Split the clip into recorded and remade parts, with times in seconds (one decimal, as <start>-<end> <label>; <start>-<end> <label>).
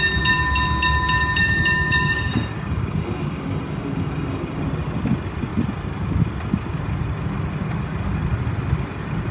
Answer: 0.0-1.4 recorded; 1.4-4.6 remade; 4.6-9.3 recorded